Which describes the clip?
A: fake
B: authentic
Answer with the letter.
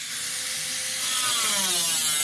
B